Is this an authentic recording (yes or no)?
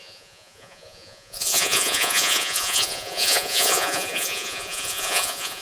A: no